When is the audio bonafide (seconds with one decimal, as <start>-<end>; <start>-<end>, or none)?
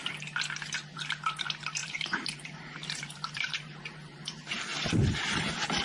0.0-1.8; 4.6-5.8